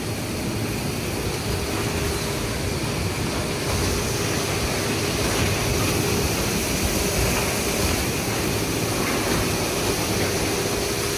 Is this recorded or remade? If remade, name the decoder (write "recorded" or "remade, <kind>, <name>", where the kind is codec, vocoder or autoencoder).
recorded